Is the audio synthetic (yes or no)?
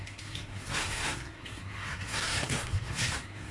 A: yes